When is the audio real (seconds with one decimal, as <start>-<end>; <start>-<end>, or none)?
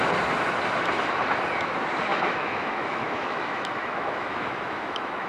0.0-2.1